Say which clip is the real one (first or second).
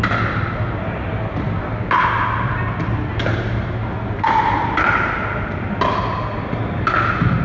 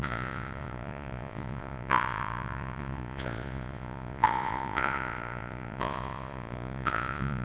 first